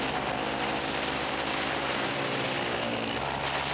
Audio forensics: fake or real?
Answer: real